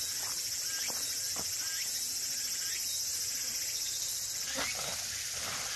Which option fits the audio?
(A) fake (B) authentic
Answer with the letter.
B